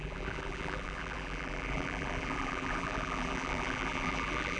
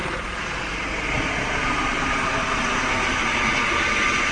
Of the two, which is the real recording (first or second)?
second